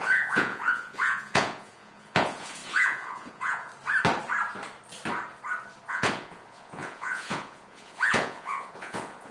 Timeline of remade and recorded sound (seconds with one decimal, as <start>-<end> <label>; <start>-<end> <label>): 0.0-3.7 remade; 3.7-5.9 recorded; 5.9-9.3 remade

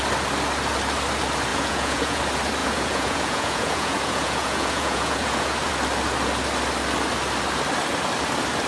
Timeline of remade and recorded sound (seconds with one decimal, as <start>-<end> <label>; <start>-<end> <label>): 0.0-1.5 recorded; 1.5-2.2 remade; 2.2-2.6 recorded; 2.6-5.7 remade; 5.7-8.7 recorded

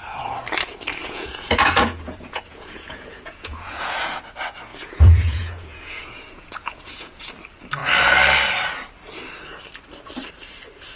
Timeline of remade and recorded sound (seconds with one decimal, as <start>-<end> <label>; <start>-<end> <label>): 0.0-1.0 recorded; 1.0-4.2 remade; 4.2-4.7 recorded; 4.7-7.2 remade; 7.2-11.0 recorded